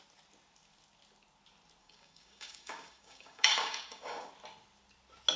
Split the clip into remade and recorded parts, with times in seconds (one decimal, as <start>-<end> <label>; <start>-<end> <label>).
0.0-1.8 recorded; 1.8-4.3 remade; 4.3-5.4 recorded